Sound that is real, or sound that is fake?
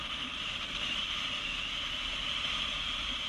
real